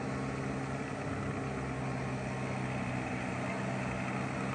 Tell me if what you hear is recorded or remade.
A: recorded